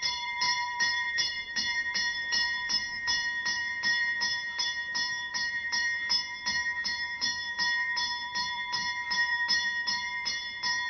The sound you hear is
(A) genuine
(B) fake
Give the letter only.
B